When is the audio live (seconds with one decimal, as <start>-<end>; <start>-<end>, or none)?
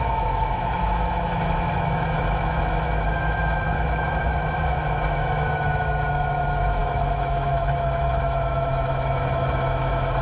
none